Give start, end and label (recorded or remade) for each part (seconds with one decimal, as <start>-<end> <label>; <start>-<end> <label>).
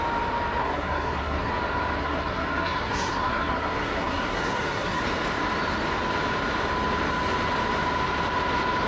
0.0-0.6 recorded; 0.6-1.5 remade; 1.5-2.0 recorded; 2.0-5.0 remade; 5.0-8.9 recorded